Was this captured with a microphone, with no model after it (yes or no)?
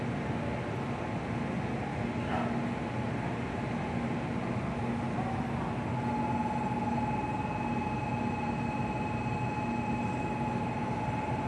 yes